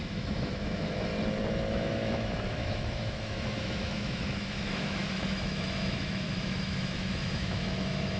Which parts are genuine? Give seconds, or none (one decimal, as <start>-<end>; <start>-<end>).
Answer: 1.1-1.7